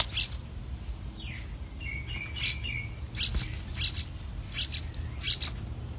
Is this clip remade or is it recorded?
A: recorded